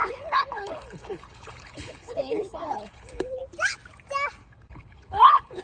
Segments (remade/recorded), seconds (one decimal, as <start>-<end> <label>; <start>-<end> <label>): 0.0-3.4 remade; 3.4-4.4 recorded; 4.4-5.6 remade